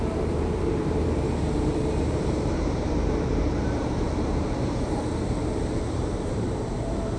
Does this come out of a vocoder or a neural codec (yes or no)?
yes